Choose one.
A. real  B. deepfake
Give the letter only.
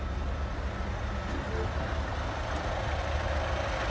A